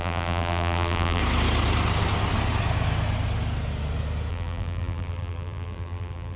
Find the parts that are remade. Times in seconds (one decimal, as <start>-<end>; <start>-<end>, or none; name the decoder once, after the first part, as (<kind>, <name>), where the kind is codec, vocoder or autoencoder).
0.0-1.2 (vocoder, BigVGAN v2); 4.3-6.4